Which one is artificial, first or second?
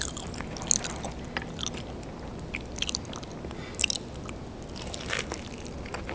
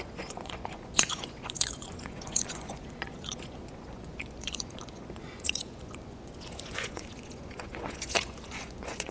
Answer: second